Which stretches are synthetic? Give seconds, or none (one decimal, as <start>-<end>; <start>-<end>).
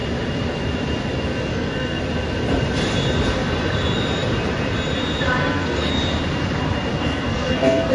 1.5-2.0; 5.4-5.9; 6.9-7.9